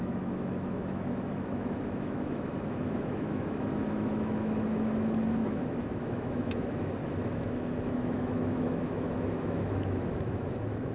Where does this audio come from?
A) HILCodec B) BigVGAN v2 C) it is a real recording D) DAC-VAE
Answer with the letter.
D